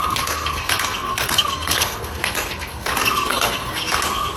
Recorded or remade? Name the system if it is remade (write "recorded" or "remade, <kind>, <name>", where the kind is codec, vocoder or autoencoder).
remade, codec, SNAC